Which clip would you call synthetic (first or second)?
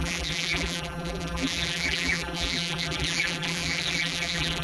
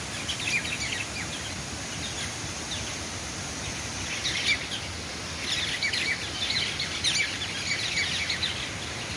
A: first